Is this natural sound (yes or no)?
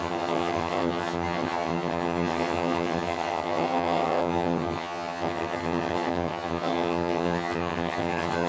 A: no